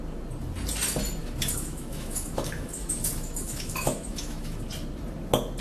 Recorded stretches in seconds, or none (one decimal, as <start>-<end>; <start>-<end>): 0.0-1.2; 4.6-5.6